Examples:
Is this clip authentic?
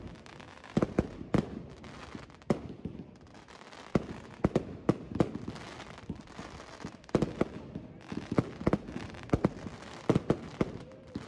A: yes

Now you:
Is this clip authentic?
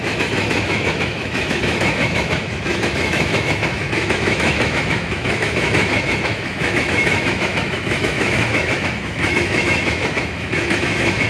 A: no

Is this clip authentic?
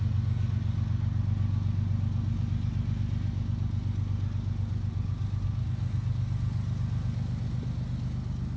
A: yes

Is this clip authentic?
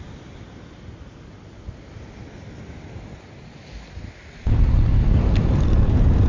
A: yes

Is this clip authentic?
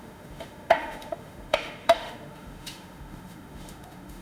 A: no